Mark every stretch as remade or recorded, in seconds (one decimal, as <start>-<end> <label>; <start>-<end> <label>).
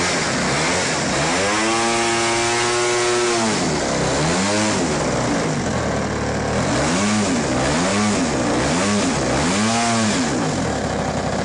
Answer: 0.0-11.4 recorded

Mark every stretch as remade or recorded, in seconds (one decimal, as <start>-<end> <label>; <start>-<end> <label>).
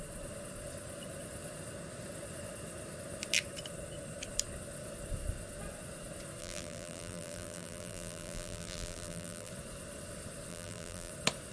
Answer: 0.0-6.4 recorded; 6.4-9.5 remade; 9.5-10.5 recorded; 10.5-11.1 remade; 11.1-11.5 recorded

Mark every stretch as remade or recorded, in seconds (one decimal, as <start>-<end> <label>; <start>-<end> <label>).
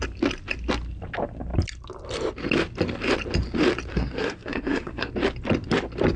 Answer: 0.0-3.9 recorded; 3.9-5.1 remade; 5.1-6.2 recorded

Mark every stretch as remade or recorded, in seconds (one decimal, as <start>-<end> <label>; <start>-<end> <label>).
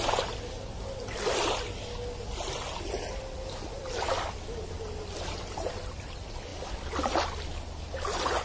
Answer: 0.0-8.4 recorded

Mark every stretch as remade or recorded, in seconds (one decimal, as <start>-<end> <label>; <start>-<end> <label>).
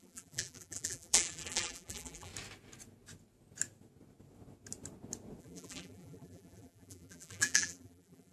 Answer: 0.0-2.3 remade; 2.3-5.4 recorded; 5.4-8.3 remade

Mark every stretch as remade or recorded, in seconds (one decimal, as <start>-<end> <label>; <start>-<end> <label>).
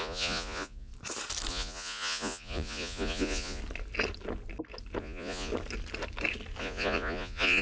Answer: 0.0-0.9 remade; 0.9-1.5 recorded; 1.5-3.6 remade; 3.6-5.0 recorded; 5.0-5.5 remade; 5.5-6.6 recorded; 6.6-7.6 remade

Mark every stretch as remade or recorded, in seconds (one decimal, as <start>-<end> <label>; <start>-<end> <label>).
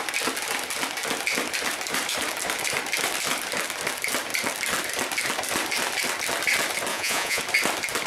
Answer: 0.0-6.9 recorded; 6.9-7.4 remade; 7.4-8.1 recorded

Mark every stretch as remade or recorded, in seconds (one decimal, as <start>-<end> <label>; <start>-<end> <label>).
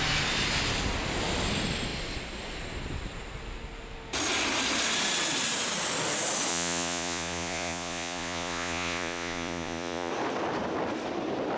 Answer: 0.0-6.5 recorded; 6.5-10.1 remade; 10.1-11.6 recorded